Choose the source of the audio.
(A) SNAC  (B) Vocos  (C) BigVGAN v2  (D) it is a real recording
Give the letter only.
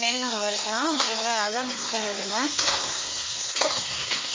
A